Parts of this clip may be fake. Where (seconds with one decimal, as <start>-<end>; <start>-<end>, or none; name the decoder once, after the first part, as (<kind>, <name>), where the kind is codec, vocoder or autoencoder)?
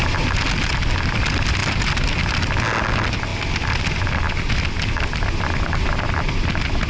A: none